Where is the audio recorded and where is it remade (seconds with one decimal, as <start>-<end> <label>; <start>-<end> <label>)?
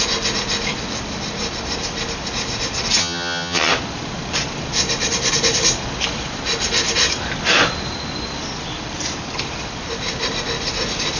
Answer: 0.0-3.0 recorded; 3.0-3.7 remade; 3.7-11.2 recorded